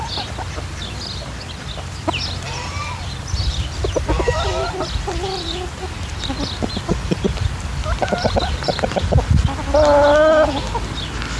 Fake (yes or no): no